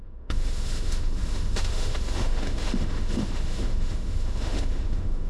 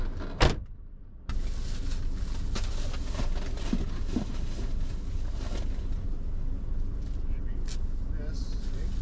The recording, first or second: second